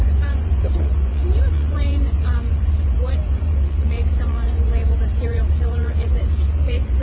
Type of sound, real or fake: fake